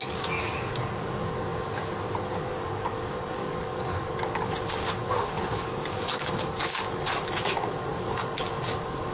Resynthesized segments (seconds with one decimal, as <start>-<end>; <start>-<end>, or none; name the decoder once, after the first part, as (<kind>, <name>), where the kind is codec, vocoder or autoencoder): 0.0-1.5 (codec, DAC); 2.4-9.1